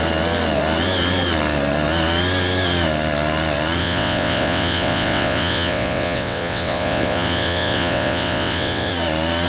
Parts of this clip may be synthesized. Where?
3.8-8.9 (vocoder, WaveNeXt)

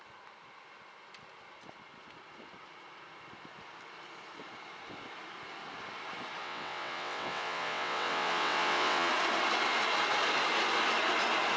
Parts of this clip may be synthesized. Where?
6.4-9.1 (vocoder, WaveNeXt)